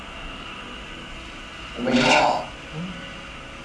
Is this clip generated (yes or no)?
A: no